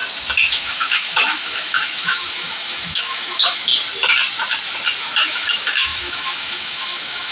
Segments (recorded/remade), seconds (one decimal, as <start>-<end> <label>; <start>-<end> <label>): 0.0-0.5 recorded; 0.5-3.7 remade; 3.7-5.0 recorded; 5.0-7.3 remade